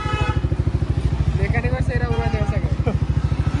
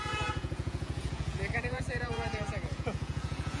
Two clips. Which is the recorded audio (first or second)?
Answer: first